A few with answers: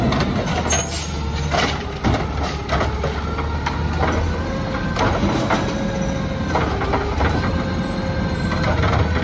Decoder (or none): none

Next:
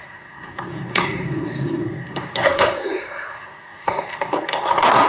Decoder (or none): codec, SNAC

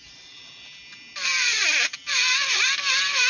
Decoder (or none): vocoder, BigVGAN v2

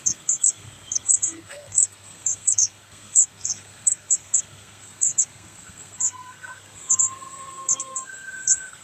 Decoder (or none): codec, SNAC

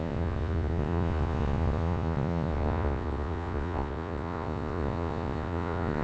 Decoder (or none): vocoder, Vocos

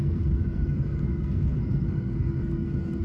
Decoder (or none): codec, SNAC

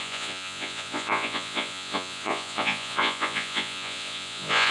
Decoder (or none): vocoder, Vocos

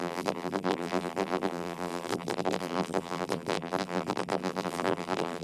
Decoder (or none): vocoder, BigVGAN v2